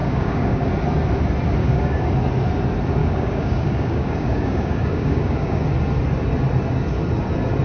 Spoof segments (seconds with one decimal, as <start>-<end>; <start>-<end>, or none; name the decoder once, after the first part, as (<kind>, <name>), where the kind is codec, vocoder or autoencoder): 0.0-0.7 (codec, DAC); 1.6-2.1; 3.0-5.6